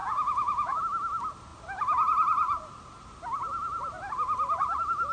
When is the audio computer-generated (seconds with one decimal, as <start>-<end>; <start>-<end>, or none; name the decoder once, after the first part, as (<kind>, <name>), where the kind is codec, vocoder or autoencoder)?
0.0-0.8 (vocoder, Vocos)